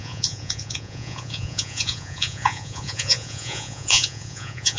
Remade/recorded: remade